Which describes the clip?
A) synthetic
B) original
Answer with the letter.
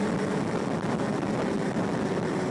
B